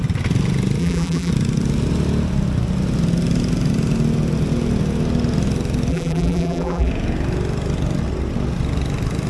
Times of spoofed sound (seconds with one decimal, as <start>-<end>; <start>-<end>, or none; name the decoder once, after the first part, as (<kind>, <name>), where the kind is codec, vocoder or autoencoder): 0.8-1.3 (vocoder, BigVGAN v2); 5.9-6.9